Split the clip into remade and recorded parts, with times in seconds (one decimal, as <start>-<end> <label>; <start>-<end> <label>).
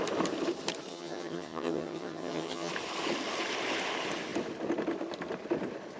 0.0-0.9 recorded; 0.9-2.7 remade; 2.7-6.0 recorded